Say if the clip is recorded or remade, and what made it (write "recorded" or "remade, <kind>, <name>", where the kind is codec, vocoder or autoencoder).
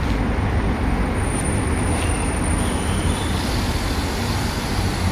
recorded